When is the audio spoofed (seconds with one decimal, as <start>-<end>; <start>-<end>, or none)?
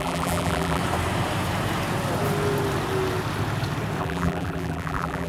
0.0-0.8; 4.0-5.3